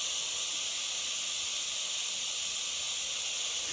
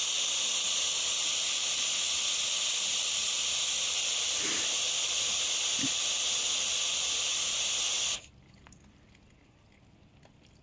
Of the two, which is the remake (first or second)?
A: second